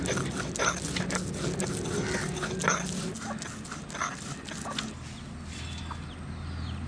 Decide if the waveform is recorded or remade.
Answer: recorded